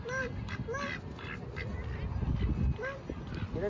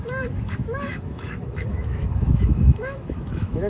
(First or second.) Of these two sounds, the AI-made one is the second